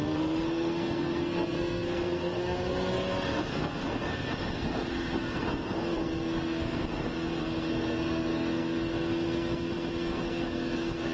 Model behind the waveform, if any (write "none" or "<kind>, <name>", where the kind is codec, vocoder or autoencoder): codec, SNAC